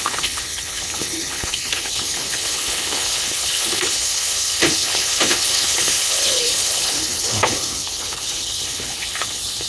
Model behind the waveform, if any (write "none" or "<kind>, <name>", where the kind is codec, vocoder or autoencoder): codec, HILCodec